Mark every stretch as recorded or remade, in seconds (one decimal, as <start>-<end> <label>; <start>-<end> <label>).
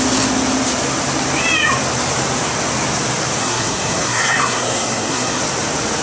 0.0-3.4 recorded; 3.4-5.4 remade; 5.4-6.0 recorded